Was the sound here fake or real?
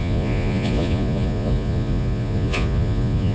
fake